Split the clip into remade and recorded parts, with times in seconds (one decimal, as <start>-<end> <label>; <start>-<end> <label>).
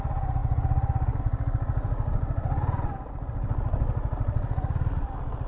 0.0-5.5 recorded